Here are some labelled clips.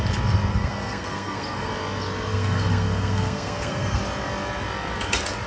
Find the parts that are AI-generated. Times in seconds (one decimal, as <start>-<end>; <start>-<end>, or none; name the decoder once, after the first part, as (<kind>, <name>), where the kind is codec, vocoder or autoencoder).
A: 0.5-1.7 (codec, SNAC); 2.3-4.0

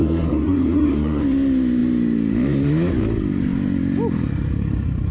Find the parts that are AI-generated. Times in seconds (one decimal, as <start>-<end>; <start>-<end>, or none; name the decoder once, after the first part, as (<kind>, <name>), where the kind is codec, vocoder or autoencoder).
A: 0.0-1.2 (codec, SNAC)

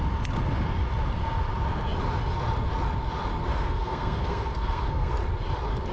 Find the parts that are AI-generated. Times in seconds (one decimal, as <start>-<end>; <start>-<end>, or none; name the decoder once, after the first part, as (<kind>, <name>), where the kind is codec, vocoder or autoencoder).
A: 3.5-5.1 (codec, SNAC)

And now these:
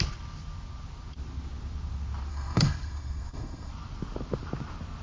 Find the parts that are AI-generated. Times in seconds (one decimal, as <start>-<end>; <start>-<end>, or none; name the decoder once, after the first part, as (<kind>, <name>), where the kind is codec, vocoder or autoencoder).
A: 2.3-3.7 (codec, SNAC)